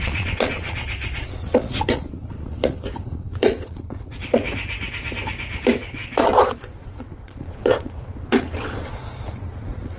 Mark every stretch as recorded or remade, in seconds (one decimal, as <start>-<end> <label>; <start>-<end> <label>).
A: 0.0-4.4 remade; 4.4-5.8 recorded; 5.8-10.0 remade